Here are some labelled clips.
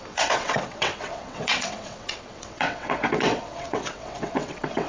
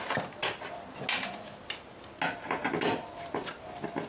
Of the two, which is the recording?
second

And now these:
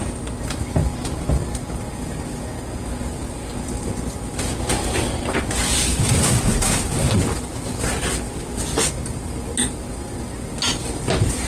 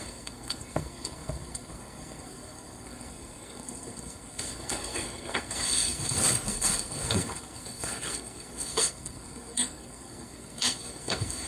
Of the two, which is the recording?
first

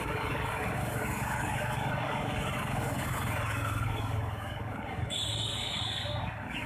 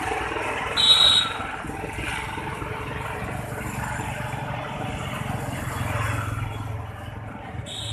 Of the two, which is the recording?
second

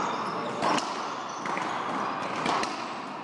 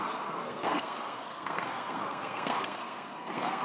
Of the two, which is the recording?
first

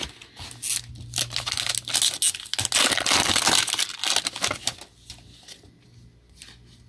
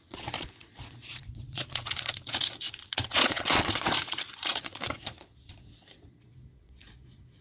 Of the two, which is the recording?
first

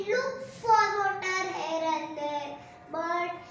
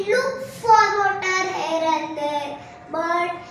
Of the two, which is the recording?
first